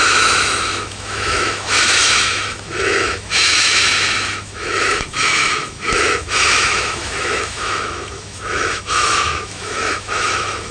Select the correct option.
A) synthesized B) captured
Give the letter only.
A